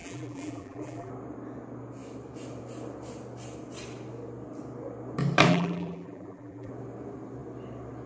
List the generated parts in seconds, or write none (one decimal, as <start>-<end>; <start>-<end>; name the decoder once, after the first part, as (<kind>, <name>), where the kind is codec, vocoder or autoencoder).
0.0-1.1 (vocoder, BigVGAN v2); 5.5-6.7

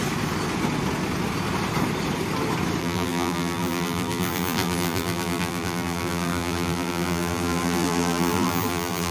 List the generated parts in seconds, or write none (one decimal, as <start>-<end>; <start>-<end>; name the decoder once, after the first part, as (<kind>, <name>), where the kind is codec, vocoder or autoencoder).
2.8-9.1 (vocoder, BigVGAN v2)

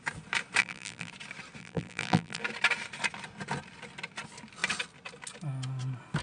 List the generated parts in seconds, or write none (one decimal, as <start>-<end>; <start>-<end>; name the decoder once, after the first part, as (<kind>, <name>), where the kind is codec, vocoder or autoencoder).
0.6-1.1 (vocoder, BigVGAN v2); 1.6-2.4

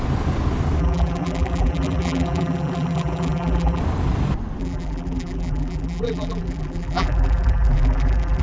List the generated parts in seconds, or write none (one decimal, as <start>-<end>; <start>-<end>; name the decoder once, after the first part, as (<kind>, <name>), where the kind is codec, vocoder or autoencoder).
0.8-3.8 (vocoder, BigVGAN v2); 4.6-8.4

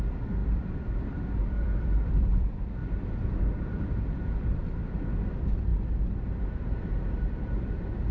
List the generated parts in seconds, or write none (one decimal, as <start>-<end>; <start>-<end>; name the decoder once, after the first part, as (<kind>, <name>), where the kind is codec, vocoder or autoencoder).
0.0-5.7 (vocoder, BigVGAN v2); 6.4-8.1

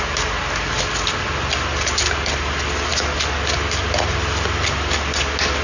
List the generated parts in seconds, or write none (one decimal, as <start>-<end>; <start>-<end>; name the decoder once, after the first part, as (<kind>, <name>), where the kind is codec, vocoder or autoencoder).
none